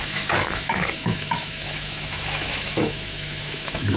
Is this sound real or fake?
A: fake